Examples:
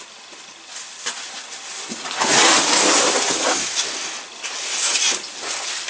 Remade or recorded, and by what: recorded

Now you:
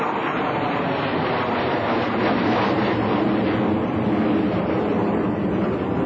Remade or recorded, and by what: recorded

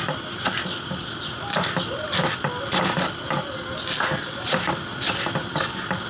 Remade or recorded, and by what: recorded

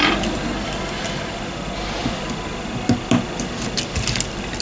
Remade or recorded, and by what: recorded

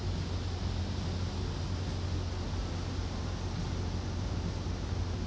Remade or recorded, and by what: recorded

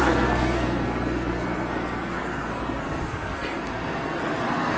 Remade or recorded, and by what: remade, codec, SNAC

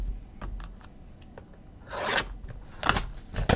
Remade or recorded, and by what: recorded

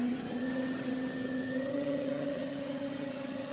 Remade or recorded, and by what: remade, vocoder, HiFi-GAN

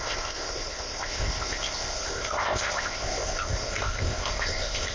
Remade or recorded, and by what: remade, codec, ZipCodec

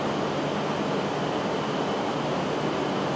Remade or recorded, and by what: recorded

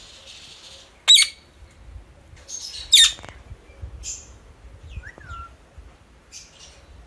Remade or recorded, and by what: recorded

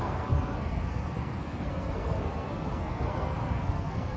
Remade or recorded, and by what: remade, codec, SNAC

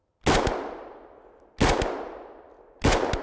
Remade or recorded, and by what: recorded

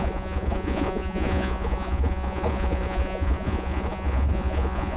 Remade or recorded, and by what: remade, vocoder, Vocos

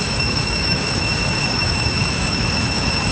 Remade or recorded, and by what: remade, autoencoder, DAC-VAE